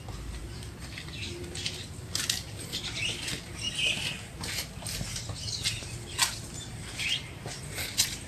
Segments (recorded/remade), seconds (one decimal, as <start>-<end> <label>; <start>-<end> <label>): 0.0-8.3 recorded